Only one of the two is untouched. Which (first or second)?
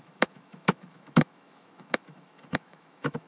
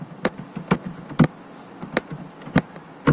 second